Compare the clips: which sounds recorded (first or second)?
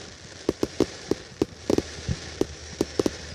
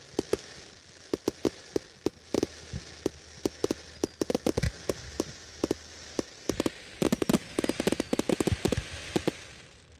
second